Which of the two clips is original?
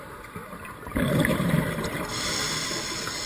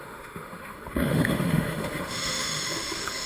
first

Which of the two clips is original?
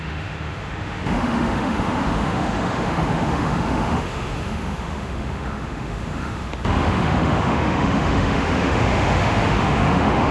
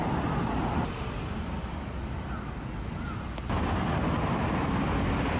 second